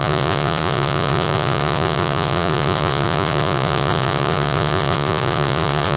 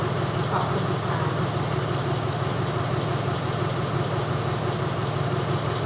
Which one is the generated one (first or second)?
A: first